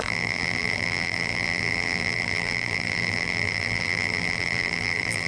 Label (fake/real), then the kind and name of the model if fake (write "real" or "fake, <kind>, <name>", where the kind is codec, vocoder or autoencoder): fake, vocoder, BigVGAN v2